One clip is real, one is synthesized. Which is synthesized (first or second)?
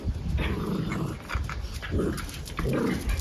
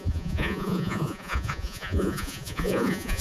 second